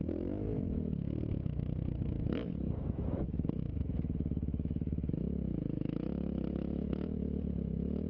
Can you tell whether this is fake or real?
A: fake